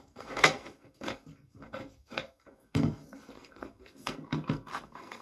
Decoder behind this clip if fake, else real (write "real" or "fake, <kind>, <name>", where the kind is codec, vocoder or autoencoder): fake, codec, SNAC